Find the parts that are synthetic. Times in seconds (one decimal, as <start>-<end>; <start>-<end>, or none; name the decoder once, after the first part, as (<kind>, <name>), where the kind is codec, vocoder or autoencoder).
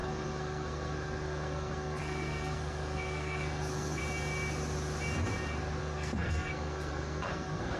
0.0-4.0 (codec, SNAC); 5.8-7.8